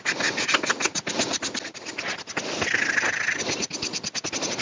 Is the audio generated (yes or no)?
no